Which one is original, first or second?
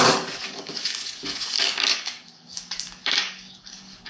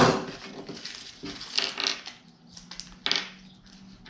second